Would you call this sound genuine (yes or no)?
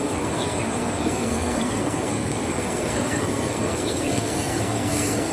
no